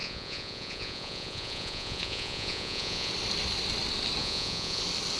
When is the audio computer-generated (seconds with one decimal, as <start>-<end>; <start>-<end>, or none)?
0.0-3.1; 4.2-4.8

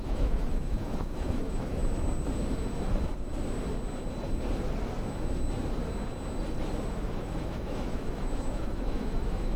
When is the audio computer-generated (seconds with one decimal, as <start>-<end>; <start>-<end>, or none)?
0.0-1.8; 6.9-9.6

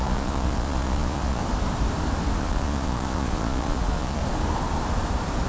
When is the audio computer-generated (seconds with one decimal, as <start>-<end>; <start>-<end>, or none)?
0.0-1.4; 2.4-4.2

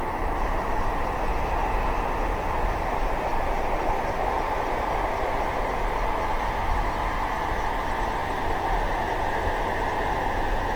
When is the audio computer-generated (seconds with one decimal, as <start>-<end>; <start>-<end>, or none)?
3.3-4.9